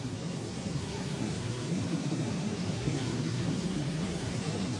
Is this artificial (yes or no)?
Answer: yes